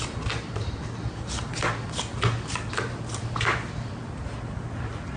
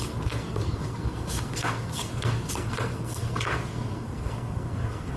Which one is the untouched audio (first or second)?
first